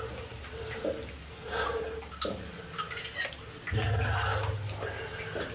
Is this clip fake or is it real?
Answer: real